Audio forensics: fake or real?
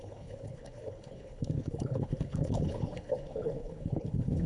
fake